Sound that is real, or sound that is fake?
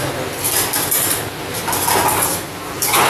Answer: real